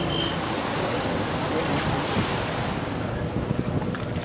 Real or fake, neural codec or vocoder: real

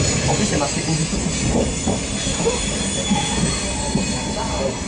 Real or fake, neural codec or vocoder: real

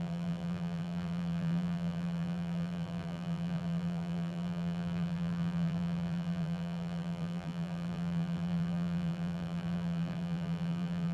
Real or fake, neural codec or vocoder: fake, vocoder, BigVGAN v2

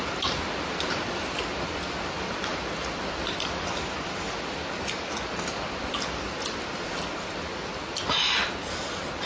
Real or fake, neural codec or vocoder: real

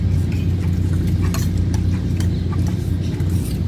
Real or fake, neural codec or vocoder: real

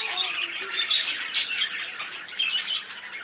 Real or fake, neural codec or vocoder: fake, vocoder, BigVGAN v2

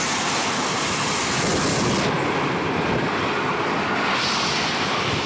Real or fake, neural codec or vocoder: real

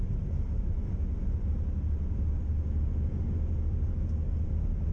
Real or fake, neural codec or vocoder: real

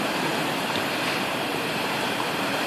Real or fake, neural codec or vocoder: fake, vocoder, BigVGAN v2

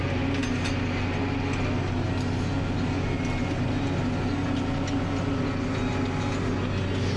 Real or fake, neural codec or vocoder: real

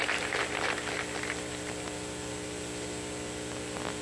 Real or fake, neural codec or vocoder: real